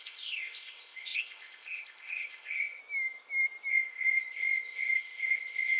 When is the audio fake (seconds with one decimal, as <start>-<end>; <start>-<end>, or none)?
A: 0.0-2.8; 3.7-5.8